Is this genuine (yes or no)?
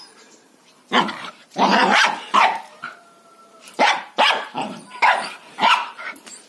no